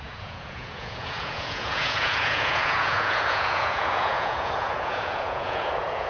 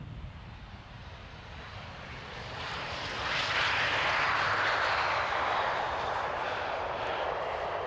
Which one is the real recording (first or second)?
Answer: second